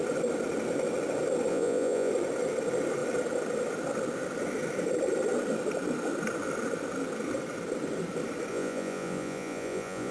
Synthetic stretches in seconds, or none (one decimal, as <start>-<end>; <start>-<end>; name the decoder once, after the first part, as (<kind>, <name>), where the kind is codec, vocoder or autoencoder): 1.5-2.1 (vocoder, Vocos); 8.5-10.1